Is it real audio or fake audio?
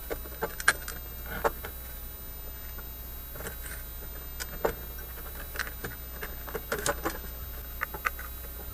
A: real